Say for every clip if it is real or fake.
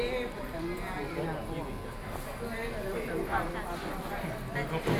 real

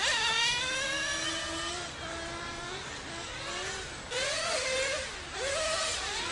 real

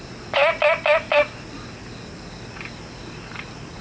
real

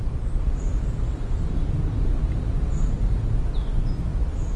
real